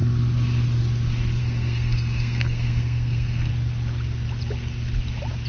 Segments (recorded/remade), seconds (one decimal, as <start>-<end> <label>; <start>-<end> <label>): 0.0-1.4 recorded; 1.4-3.5 remade; 3.5-5.5 recorded